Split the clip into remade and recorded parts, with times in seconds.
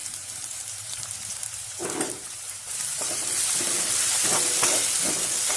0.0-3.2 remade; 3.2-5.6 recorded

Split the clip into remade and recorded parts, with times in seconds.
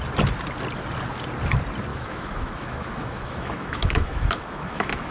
0.0-1.9 recorded; 1.9-5.1 remade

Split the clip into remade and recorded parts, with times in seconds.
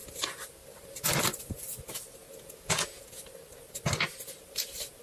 0.0-2.2 recorded; 2.2-3.2 remade; 3.2-5.0 recorded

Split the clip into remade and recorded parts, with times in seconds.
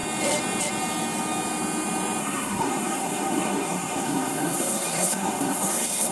0.0-2.2 recorded; 2.2-6.1 remade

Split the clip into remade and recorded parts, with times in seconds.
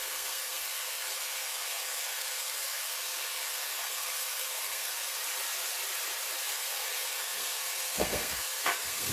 0.0-5.2 remade; 5.2-6.4 recorded; 6.4-9.1 remade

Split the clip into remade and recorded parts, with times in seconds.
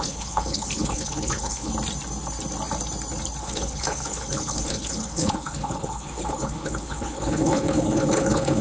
0.0-1.7 remade; 1.7-3.4 recorded; 3.4-8.6 remade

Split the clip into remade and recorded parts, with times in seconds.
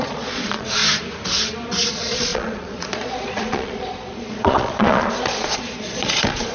0.0-0.8 remade; 0.8-1.9 recorded; 1.9-6.5 remade